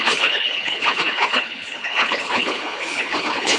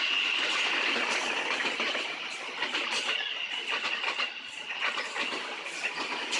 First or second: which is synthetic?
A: first